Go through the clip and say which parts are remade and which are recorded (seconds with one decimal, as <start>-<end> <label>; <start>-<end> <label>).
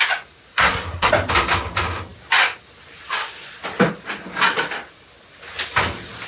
0.0-0.5 recorded; 0.5-1.1 remade; 1.1-6.3 recorded